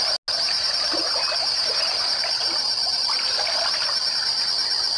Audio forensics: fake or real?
real